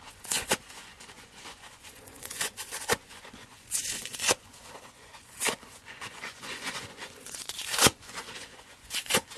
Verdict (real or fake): fake